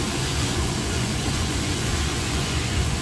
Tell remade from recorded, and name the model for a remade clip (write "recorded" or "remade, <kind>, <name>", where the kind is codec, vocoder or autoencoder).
remade, vocoder, Vocos